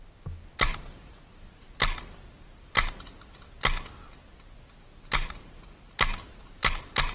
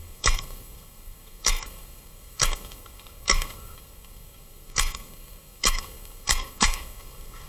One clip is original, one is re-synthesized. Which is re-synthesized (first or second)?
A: second